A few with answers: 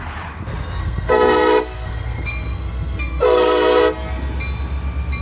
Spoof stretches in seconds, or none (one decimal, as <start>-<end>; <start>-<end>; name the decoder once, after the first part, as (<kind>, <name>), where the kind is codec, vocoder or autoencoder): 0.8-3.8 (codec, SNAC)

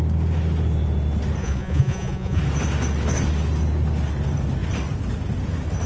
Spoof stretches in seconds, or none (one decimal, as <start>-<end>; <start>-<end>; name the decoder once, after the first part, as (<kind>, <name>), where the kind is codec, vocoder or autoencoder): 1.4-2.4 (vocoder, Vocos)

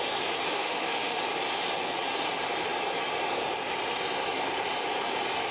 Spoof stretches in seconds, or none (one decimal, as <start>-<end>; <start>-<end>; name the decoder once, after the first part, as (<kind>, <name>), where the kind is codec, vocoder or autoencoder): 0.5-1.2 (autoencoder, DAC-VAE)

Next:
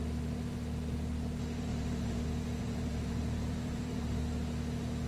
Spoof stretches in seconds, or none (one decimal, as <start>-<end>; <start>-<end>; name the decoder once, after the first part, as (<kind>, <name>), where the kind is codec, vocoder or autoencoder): 1.7-2.2 (vocoder, BigVGAN v2); 2.6-4.2